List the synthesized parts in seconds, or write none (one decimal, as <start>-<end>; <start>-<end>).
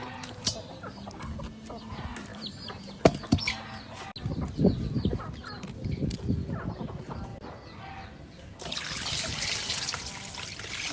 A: 0.0-0.6